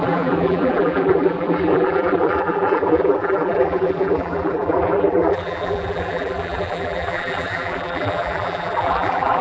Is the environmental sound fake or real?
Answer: fake